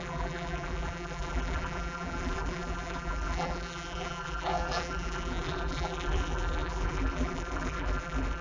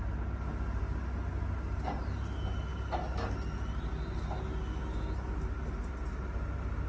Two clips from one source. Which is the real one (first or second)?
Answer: second